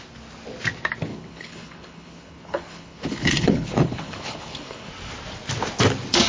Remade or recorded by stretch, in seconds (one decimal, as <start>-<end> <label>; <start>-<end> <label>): 0.0-1.1 recorded; 1.1-4.9 remade; 4.9-6.3 recorded